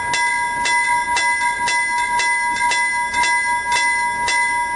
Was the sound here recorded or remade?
recorded